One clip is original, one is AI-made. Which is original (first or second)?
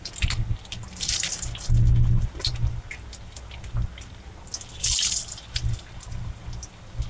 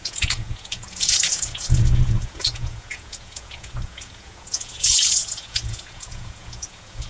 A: first